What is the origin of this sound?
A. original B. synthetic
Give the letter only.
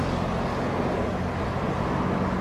A